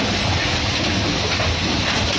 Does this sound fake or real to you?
real